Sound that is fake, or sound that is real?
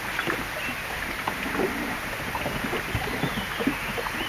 real